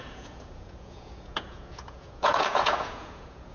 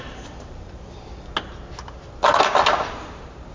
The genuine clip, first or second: second